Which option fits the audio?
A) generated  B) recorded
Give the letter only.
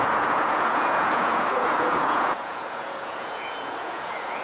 A